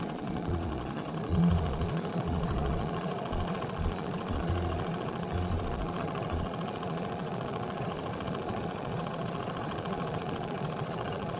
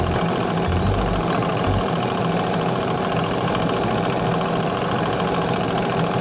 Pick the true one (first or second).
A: second